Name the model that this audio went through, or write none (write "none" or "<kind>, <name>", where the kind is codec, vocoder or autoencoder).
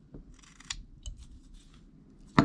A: none